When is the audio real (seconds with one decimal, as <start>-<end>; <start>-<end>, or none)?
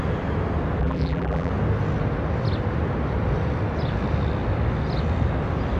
0.0-0.8; 1.5-5.8